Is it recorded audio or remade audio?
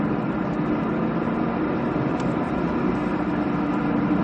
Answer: recorded